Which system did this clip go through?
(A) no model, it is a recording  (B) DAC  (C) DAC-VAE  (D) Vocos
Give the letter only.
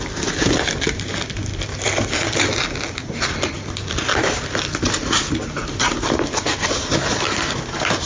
A